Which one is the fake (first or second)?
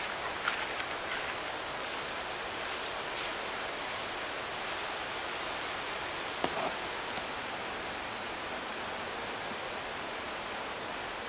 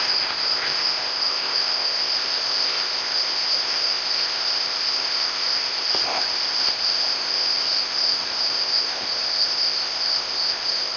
second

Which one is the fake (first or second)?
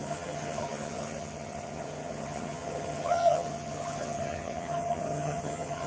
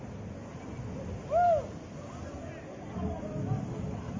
first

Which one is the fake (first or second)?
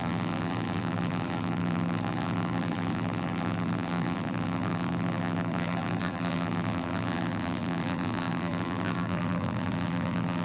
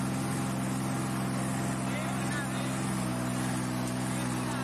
first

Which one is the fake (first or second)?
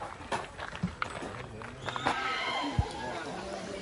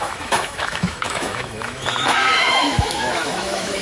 second